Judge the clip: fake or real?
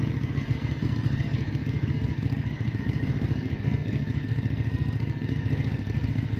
fake